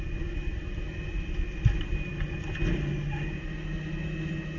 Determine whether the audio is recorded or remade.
recorded